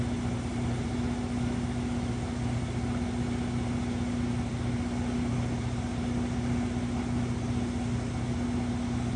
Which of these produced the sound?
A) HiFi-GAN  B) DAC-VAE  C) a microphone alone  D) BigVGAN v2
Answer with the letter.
C